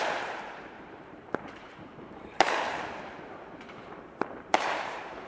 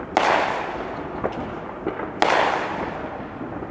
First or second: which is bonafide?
second